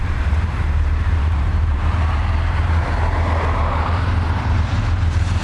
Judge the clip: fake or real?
fake